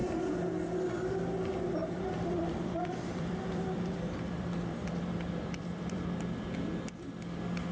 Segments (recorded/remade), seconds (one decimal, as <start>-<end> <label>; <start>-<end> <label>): 0.0-1.8 recorded; 1.8-6.1 remade; 6.1-7.7 recorded